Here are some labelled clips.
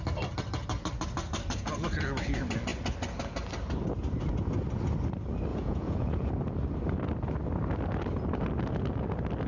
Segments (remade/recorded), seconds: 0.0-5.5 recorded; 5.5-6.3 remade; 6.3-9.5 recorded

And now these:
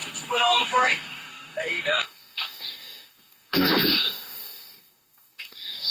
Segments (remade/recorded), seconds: 0.0-5.9 remade

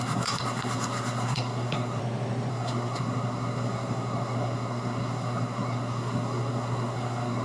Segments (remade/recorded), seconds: 0.0-2.0 remade; 2.0-2.5 recorded; 2.5-7.4 remade

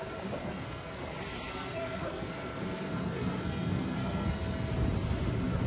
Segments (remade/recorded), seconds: 0.0-0.4 recorded; 0.4-1.1 remade; 1.1-1.5 recorded; 1.5-4.7 remade; 4.7-5.7 recorded

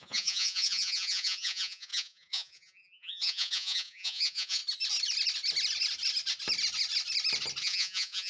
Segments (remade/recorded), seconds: 0.0-4.6 remade; 4.6-7.6 recorded; 7.6-8.3 remade

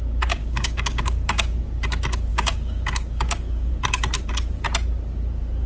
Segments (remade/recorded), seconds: 0.0-0.4 recorded; 0.4-1.6 remade; 1.6-2.3 recorded; 2.3-3.7 remade; 3.7-5.7 recorded

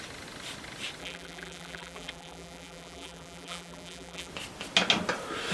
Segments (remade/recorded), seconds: 0.0-1.0 recorded; 1.0-4.3 remade; 4.3-5.5 recorded

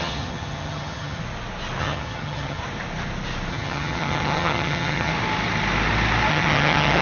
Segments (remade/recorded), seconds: 0.0-1.2 remade; 1.2-1.8 recorded; 1.8-2.6 remade; 2.6-3.5 recorded; 3.5-5.1 remade; 5.1-6.3 recorded; 6.3-7.0 remade